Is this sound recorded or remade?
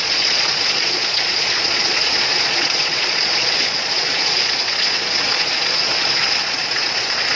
remade